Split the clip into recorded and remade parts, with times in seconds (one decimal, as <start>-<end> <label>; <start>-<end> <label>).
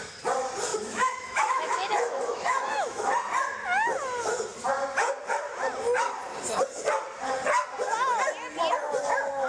0.0-0.7 recorded; 0.7-3.1 remade; 3.1-9.5 recorded